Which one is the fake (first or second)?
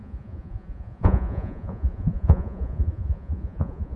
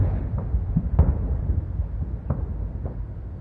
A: first